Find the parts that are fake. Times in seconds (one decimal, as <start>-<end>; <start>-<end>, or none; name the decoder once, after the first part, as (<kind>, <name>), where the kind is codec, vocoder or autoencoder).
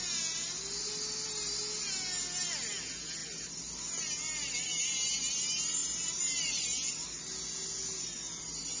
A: 5.8-7.2 (vocoder, BigVGAN v2)